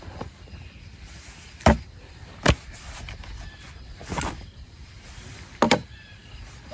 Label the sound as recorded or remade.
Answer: recorded